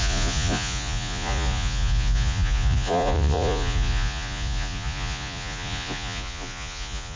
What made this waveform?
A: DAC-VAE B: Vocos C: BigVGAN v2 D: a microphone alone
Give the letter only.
B